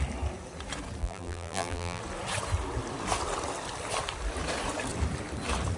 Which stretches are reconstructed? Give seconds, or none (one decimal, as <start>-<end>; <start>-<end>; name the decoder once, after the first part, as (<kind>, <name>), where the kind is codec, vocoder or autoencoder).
1.0-2.0 (vocoder, BigVGAN v2)